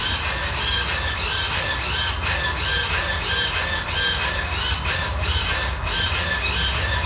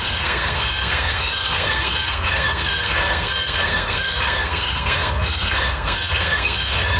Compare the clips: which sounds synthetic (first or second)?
second